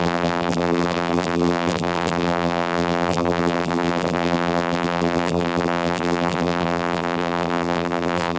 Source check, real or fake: fake